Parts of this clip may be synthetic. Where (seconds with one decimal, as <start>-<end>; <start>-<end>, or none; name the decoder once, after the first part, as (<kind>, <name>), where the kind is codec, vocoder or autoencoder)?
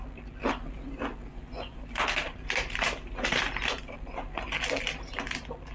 1.3-1.8 (vocoder, Vocos)